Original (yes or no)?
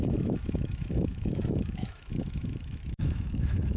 no